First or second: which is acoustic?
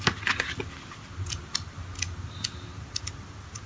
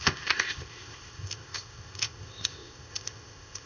first